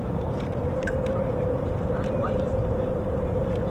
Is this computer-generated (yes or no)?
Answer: yes